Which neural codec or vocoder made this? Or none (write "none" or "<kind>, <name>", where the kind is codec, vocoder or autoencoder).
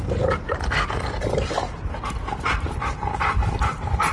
vocoder, BigVGAN v2